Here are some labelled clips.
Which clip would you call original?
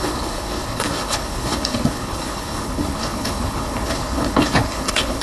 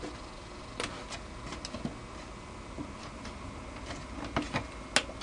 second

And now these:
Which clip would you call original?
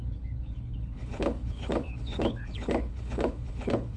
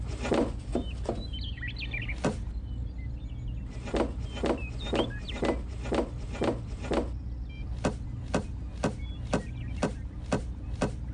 second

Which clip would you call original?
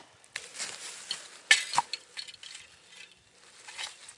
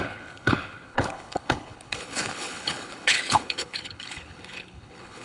first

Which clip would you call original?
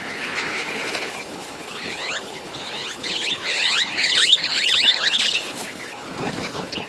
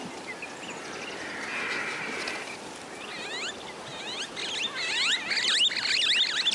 second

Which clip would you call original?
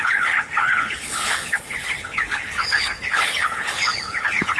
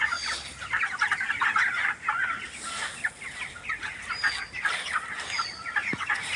second